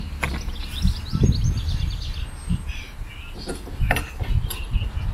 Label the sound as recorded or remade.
recorded